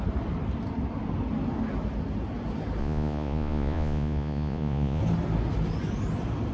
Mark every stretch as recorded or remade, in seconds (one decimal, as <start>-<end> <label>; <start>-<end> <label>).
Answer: 0.0-2.8 recorded; 2.8-5.0 remade; 5.0-6.5 recorded